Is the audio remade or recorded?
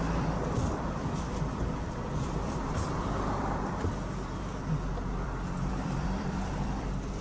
remade